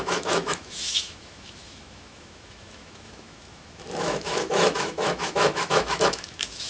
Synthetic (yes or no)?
yes